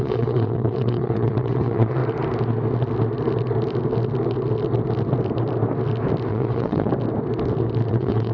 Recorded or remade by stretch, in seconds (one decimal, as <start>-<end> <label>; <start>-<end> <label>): 0.0-2.0 remade; 2.0-6.3 recorded; 6.3-6.9 remade; 6.9-7.9 recorded; 7.9-8.3 remade